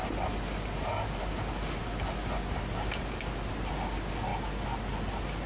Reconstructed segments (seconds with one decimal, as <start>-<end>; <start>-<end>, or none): none